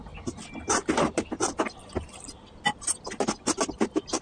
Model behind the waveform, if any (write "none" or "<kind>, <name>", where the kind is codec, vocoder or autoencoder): none